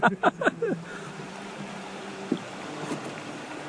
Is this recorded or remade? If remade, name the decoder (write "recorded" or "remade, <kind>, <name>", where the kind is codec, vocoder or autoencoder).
remade, vocoder, BigVGAN v2